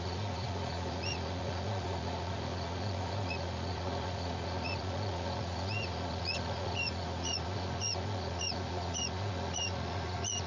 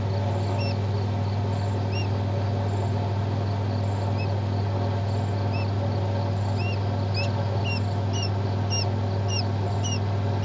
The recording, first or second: second